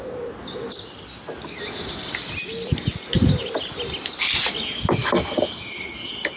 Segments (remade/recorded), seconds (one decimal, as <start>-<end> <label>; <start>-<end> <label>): 0.0-6.4 recorded